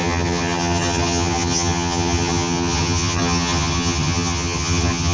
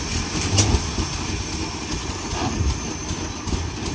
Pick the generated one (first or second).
first